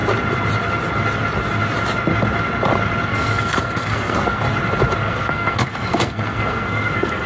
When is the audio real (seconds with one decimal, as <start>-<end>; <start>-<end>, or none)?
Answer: 0.0-3.1; 4.4-5.0